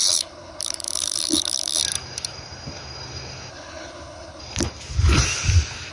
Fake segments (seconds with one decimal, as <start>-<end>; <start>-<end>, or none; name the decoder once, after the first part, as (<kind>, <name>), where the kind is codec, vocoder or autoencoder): 0.0-1.8 (codec, HILCodec); 3.5-4.4